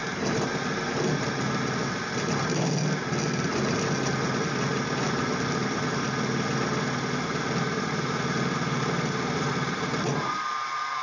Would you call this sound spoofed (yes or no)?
no